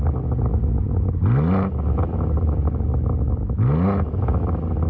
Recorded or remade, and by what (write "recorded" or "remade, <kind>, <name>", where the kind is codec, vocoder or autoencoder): recorded